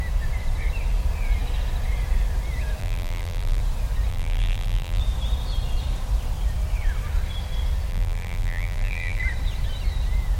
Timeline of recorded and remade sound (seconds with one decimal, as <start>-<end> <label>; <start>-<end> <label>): 0.0-2.8 recorded; 2.8-3.6 remade; 3.6-4.1 recorded; 4.1-5.0 remade; 5.0-7.9 recorded; 7.9-9.2 remade; 9.2-10.4 recorded